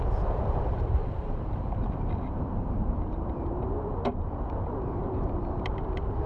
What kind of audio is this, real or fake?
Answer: fake